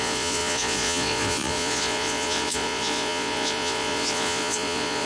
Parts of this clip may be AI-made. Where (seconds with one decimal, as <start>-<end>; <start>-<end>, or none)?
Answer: 0.0-5.1